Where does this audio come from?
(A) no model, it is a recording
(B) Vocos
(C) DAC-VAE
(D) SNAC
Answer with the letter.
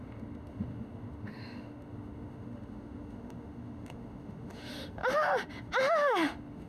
C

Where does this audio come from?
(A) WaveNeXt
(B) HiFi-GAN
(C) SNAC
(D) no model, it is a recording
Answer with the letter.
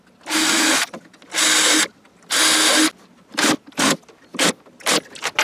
D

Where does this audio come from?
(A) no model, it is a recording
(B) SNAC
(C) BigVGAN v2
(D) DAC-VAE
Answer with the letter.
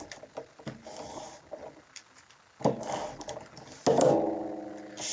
A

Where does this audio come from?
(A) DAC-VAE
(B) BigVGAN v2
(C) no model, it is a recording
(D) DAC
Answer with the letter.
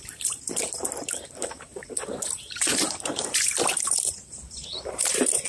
B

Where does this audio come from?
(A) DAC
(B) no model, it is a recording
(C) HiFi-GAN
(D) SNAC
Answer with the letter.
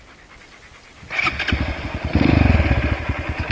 B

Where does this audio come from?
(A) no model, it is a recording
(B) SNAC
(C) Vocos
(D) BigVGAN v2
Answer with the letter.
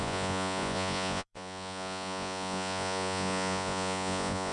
C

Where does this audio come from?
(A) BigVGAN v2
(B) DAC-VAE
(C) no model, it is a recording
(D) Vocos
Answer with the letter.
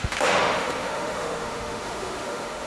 B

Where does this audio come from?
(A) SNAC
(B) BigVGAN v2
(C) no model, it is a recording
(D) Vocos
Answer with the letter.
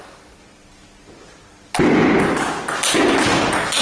C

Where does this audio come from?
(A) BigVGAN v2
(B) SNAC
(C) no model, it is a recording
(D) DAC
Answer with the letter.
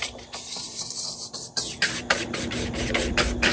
A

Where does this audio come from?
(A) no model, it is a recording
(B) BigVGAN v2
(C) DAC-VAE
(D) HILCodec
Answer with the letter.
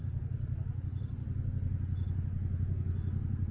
A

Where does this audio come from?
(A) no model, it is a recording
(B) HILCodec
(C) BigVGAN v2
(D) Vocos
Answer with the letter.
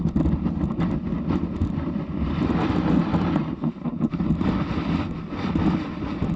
A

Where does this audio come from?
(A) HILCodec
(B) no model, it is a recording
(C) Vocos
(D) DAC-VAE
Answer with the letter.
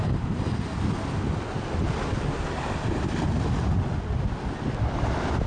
B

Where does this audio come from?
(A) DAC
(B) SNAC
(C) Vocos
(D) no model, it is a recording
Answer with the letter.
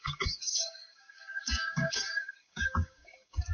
A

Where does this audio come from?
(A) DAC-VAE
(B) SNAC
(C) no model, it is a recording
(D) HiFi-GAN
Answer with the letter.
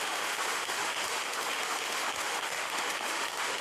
A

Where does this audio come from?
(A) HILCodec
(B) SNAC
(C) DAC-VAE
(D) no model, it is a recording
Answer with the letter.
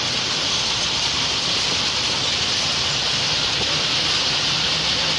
D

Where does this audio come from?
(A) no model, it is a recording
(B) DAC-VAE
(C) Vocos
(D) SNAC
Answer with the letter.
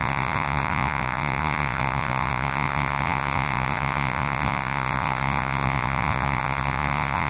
C